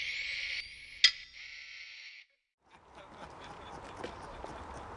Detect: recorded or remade recorded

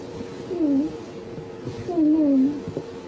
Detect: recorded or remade recorded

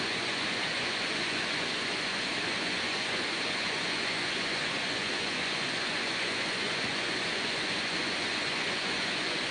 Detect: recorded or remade remade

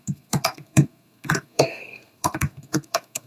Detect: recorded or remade remade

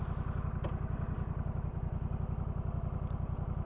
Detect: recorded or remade recorded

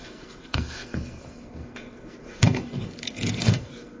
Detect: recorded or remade remade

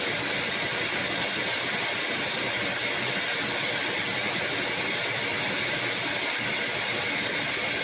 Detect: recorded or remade recorded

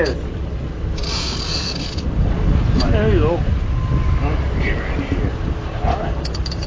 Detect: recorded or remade recorded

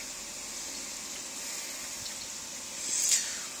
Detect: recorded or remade recorded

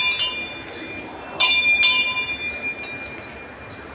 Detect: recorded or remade recorded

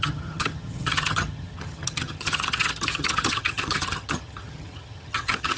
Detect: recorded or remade remade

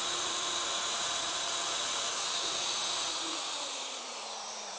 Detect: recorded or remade remade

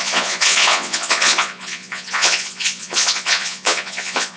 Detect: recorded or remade remade